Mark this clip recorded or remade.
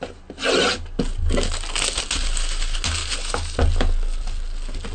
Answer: recorded